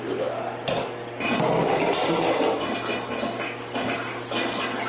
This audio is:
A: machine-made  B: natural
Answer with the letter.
B